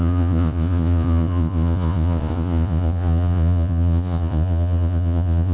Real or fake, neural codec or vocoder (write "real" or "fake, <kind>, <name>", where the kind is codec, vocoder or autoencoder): fake, vocoder, Vocos